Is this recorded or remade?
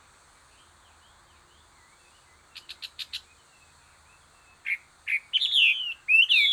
recorded